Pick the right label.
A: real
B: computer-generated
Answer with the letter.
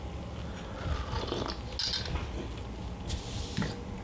A